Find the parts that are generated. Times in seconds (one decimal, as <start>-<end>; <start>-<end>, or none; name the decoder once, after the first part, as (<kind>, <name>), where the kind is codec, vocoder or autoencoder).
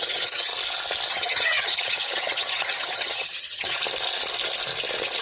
0.0-0.5 (vocoder, HiFi-GAN); 1.1-3.8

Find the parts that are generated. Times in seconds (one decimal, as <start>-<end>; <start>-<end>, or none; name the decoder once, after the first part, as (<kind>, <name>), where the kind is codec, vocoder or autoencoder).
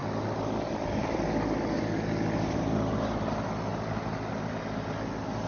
none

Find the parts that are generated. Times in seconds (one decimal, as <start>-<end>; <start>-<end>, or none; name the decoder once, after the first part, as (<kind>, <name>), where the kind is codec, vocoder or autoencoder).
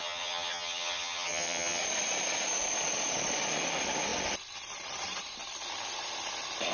0.0-1.8 (vocoder, HiFi-GAN)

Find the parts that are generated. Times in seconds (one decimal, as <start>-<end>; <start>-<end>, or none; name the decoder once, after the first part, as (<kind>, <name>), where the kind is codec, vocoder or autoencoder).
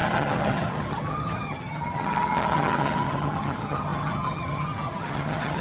0.0-5.6 (vocoder, HiFi-GAN)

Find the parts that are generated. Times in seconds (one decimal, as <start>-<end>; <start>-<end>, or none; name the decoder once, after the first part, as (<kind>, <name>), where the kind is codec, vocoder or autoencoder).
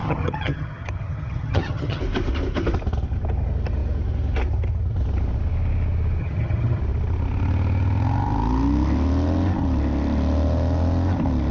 0.0-2.0 (vocoder, HiFi-GAN); 6.2-6.8